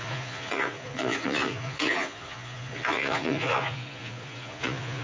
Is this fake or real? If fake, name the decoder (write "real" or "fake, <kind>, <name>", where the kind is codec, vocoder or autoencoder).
fake, vocoder, Vocos